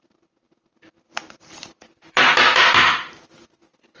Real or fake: fake